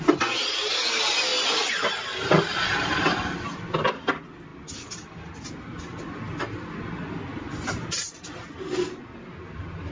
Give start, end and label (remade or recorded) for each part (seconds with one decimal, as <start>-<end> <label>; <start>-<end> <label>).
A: 0.0-9.9 recorded